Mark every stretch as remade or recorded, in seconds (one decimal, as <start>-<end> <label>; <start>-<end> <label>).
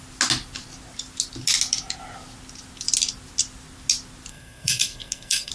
0.0-4.3 recorded; 4.3-5.5 remade